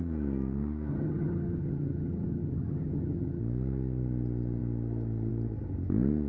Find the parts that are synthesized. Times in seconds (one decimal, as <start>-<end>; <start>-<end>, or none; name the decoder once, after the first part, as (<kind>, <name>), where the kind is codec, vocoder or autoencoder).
0.9-3.4 (vocoder, HiFi-GAN)